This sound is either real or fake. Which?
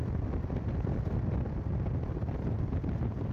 real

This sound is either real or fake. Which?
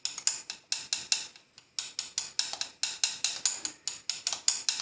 real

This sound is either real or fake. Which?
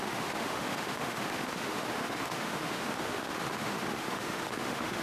fake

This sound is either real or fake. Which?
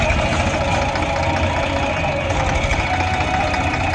real